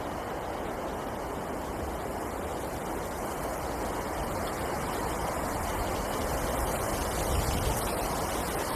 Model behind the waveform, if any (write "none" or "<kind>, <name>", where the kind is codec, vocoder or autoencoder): none